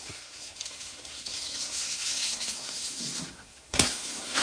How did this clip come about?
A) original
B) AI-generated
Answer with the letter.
B